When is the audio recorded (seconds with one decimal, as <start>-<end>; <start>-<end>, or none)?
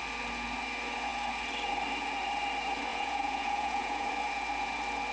0.0-2.9; 4.1-5.1